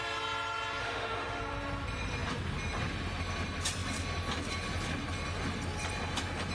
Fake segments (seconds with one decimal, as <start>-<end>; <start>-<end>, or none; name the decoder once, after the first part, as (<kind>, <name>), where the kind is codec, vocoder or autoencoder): 0.8-1.4 (autoencoder, DAC-VAE)